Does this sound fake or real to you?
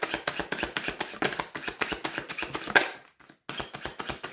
real